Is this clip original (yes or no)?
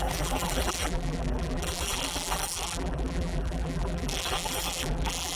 no